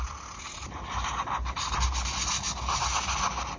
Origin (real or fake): real